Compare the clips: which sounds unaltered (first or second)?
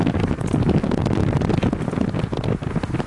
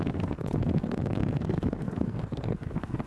first